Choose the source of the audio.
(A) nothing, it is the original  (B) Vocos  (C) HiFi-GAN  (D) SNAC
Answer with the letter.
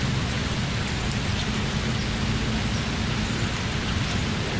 A